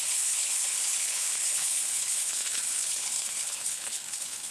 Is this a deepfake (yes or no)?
yes